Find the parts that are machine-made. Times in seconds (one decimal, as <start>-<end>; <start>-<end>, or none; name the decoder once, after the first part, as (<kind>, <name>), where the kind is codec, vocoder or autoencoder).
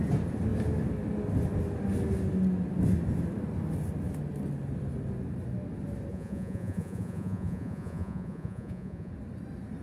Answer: 6.1-9.1 (vocoder, Vocos)